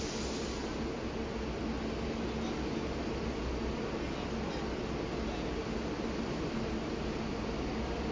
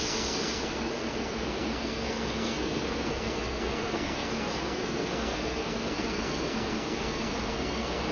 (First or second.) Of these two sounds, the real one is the first